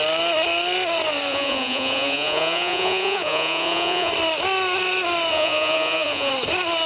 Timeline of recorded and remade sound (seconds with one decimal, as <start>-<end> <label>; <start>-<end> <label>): 0.0-1.3 recorded; 1.3-4.1 remade; 4.1-5.3 recorded; 5.3-6.3 remade; 6.3-6.9 recorded